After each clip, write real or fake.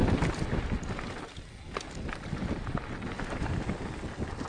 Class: real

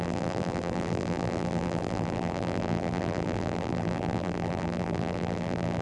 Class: fake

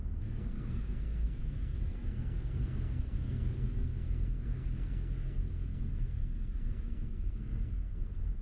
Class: fake